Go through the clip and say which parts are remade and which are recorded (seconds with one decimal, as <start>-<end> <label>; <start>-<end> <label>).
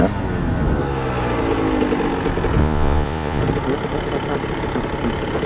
0.0-2.6 recorded; 2.6-3.4 remade; 3.4-5.5 recorded